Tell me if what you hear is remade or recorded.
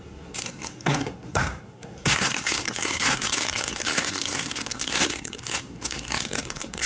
remade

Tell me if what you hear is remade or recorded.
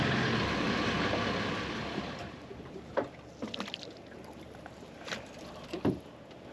recorded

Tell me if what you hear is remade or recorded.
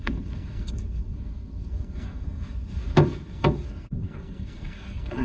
remade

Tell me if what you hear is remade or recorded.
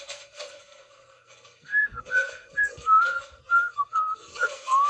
remade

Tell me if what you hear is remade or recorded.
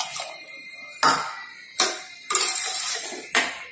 recorded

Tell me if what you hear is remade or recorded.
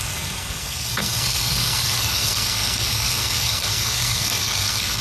remade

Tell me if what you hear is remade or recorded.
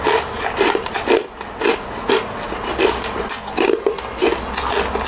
recorded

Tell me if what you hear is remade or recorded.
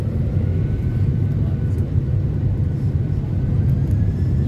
recorded